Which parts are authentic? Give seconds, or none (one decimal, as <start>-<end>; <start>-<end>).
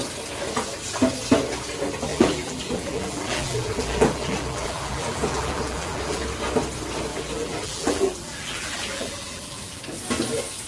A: 0.0-2.1; 6.2-7.1; 9.8-10.7